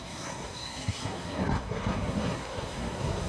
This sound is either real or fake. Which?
fake